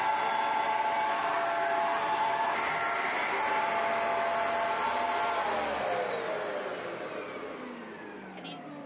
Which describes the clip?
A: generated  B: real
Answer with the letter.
B